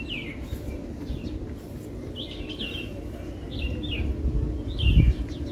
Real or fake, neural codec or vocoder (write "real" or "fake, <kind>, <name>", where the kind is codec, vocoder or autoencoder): real